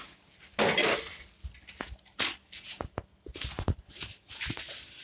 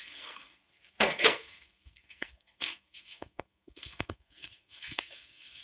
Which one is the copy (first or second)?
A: second